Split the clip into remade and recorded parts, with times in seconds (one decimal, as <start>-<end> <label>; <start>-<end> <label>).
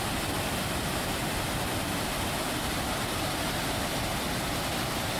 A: 0.0-5.2 recorded